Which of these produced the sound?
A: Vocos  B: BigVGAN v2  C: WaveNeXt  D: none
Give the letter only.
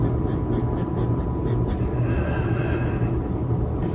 D